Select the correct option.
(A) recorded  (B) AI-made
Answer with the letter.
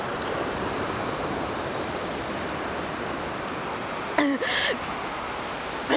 B